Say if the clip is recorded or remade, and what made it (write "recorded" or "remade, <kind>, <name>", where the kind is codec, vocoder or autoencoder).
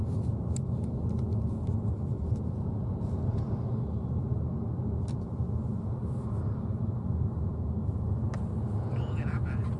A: recorded